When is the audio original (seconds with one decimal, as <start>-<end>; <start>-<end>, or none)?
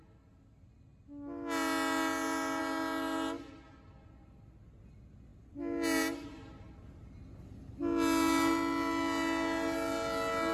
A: 0.0-10.5